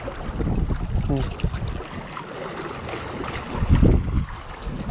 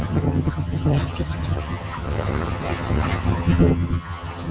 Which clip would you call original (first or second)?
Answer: first